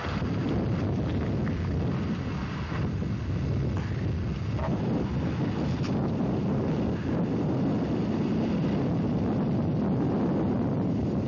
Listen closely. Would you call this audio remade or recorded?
recorded